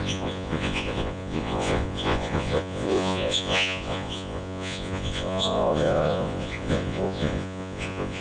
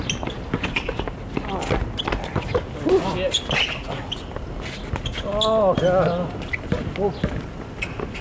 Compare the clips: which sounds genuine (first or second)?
second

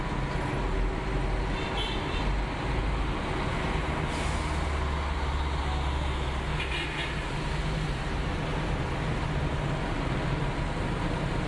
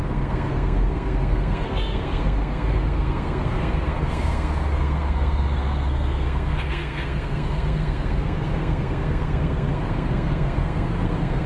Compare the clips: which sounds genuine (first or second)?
first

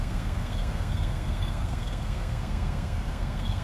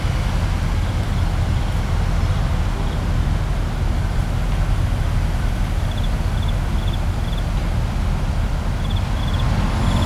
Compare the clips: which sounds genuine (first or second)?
second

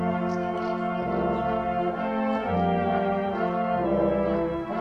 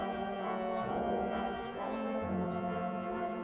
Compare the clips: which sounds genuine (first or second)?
first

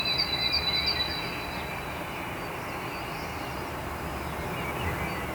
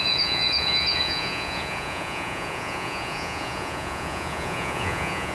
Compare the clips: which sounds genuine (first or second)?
first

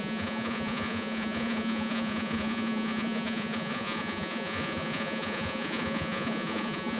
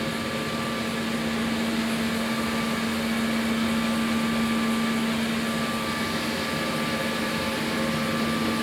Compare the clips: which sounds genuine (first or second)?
second